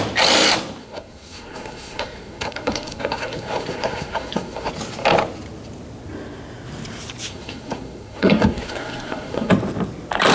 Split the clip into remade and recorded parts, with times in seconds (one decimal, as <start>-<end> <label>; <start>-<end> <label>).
0.0-0.8 recorded; 0.8-4.7 remade; 4.7-7.3 recorded; 7.3-9.5 remade; 9.5-10.3 recorded